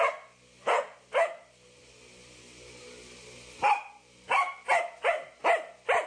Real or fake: real